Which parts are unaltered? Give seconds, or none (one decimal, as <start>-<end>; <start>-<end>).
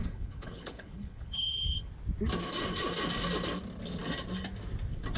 1.9-5.2